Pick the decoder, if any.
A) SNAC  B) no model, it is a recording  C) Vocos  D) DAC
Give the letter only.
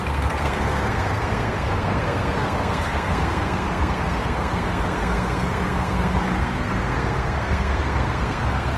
A